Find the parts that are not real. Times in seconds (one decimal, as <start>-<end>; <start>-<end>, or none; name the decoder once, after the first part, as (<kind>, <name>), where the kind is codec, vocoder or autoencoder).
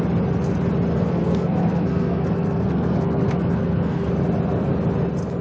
0.9-4.1 (codec, SNAC)